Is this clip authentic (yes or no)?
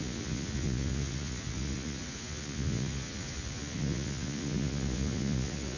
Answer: no